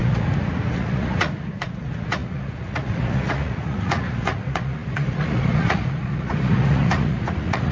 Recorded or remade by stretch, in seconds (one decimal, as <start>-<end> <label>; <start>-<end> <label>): 0.0-7.7 remade